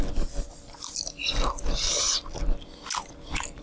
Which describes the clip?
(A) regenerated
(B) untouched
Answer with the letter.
B